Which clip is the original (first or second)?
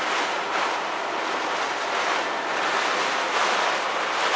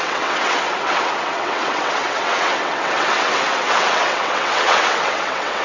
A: first